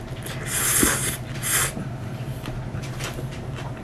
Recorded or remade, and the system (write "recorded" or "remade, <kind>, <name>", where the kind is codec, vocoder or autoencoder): recorded